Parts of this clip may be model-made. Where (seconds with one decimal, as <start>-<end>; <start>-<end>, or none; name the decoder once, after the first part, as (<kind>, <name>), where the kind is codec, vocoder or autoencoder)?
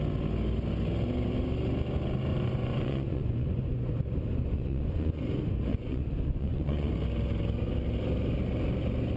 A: 2.3-3.9 (vocoder, Vocos); 4.3-5.2; 5.7-6.9